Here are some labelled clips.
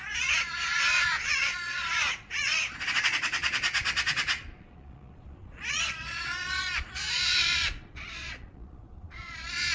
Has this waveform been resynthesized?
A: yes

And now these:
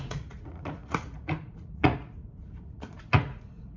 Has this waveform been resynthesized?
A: yes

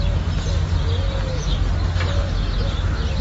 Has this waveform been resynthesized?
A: no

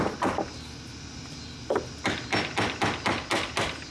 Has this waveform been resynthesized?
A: no